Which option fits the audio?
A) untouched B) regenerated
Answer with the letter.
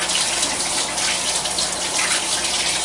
A